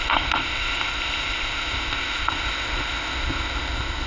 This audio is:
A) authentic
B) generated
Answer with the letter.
B